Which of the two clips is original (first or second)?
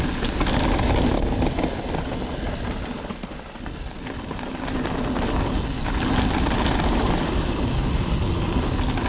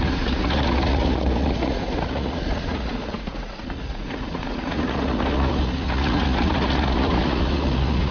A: first